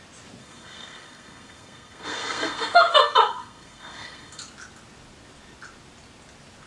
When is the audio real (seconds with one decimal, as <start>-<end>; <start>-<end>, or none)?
0.0-0.4; 4.4-6.7